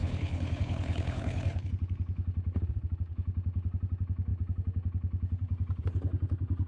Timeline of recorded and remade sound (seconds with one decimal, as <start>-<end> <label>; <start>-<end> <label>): 0.0-1.7 remade; 1.7-6.7 recorded